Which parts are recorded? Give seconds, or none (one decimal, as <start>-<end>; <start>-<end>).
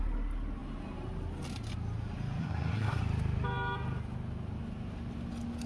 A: 0.0-2.4; 3.0-5.7